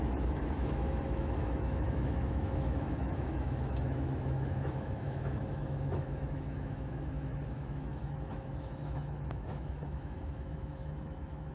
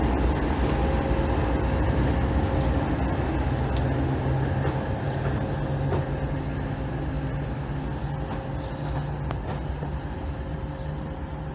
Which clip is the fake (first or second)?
first